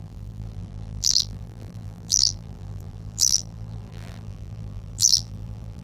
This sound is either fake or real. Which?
fake